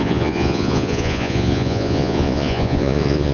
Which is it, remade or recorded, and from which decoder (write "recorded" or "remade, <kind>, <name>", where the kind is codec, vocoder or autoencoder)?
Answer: remade, vocoder, Vocos